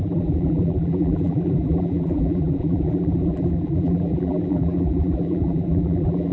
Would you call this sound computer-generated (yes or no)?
yes